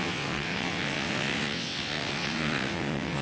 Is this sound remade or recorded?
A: remade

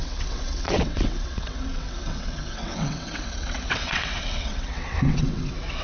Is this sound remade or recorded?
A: remade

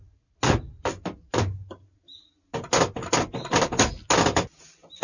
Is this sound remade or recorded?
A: recorded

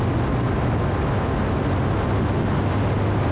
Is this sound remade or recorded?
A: recorded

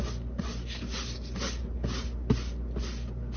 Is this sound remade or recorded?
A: recorded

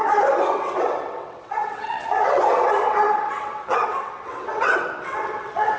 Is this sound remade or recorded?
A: remade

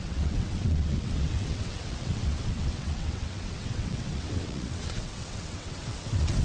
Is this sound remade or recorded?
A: remade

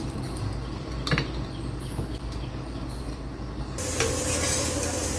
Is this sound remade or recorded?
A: recorded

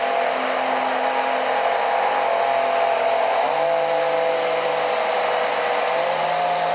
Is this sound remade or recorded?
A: recorded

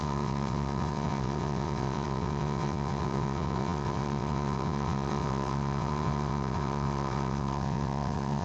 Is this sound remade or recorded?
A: remade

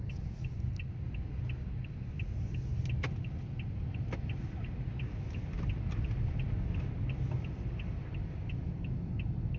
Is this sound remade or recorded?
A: recorded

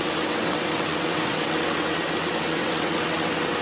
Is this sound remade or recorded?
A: remade